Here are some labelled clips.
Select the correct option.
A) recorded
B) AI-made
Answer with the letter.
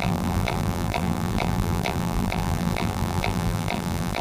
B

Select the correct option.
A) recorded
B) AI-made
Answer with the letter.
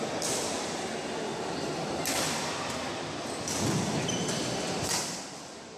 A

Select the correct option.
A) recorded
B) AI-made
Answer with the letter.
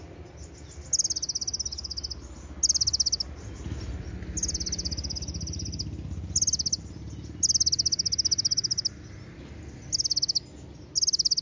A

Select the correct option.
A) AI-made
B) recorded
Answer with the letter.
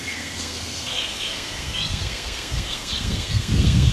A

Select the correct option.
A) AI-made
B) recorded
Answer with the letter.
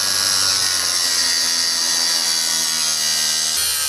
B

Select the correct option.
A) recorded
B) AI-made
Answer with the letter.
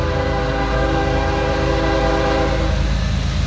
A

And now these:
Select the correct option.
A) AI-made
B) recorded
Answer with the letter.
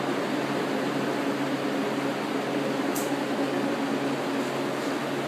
B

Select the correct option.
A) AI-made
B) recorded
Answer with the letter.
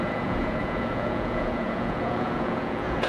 A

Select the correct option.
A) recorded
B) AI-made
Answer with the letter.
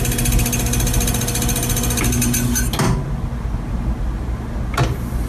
A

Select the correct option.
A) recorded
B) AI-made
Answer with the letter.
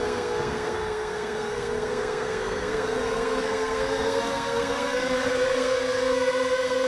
B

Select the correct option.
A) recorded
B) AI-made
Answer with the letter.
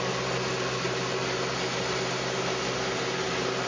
A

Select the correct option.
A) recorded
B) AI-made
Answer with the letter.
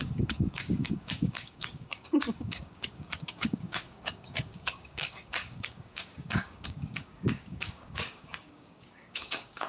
B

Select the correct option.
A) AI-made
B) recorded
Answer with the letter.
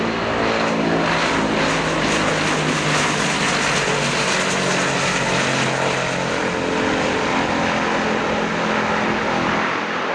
B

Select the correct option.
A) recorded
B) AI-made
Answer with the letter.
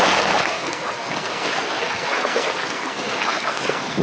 B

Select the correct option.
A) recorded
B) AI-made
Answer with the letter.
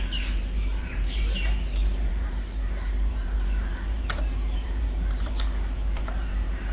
B